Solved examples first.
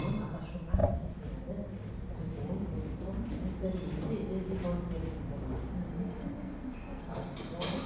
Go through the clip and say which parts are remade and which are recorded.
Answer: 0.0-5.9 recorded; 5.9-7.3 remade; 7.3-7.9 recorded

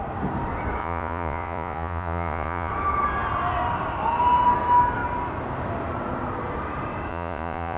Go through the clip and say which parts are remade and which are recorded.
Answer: 0.0-0.8 recorded; 0.8-2.7 remade; 2.7-7.1 recorded; 7.1-7.8 remade

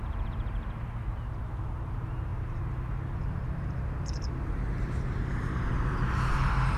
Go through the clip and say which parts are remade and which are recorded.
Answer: 0.0-6.8 remade

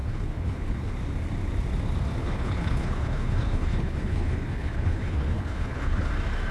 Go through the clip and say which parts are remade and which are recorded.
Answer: 0.0-0.9 remade; 0.9-2.2 recorded; 2.2-6.1 remade; 6.1-6.5 recorded

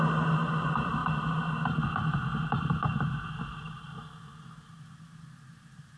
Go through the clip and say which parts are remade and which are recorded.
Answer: 0.0-6.0 recorded

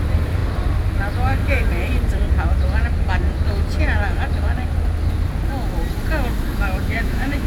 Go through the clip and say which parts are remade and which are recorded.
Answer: 0.0-6.9 recorded; 6.9-7.5 remade

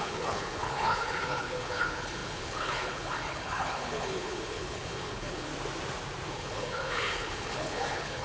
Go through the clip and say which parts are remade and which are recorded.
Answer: 0.0-5.5 remade; 5.5-6.3 recorded; 6.3-8.2 remade